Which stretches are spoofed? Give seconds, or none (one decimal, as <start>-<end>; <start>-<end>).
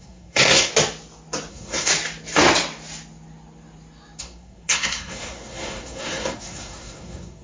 0.0-0.7; 1.5-1.9; 4.2-7.4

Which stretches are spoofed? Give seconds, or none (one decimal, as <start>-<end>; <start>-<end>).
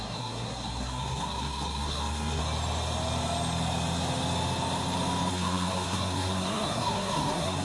0.0-2.4; 5.3-7.6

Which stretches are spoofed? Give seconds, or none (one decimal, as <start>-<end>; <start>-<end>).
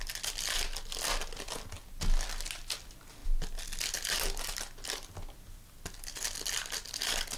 none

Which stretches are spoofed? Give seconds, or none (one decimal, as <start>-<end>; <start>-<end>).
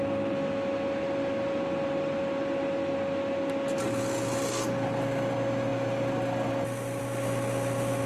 none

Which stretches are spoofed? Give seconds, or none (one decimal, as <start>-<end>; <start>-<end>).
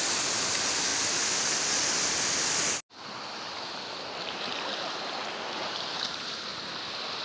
none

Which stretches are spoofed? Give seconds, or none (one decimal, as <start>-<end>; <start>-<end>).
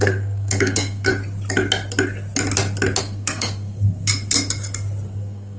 0.0-1.1; 3.0-4.1; 5.1-5.6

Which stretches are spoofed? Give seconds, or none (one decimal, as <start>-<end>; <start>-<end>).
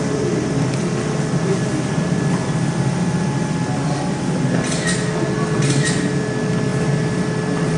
none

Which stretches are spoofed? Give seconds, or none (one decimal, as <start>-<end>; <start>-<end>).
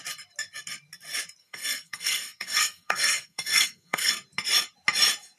1.4-4.1